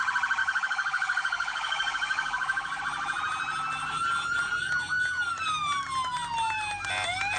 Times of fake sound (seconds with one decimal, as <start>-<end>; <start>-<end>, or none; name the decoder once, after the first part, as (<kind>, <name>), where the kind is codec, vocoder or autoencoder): 0.4-2.8 (codec, DAC)